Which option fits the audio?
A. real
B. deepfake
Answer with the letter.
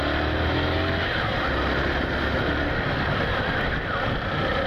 A